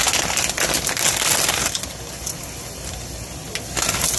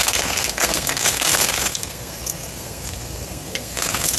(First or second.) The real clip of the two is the first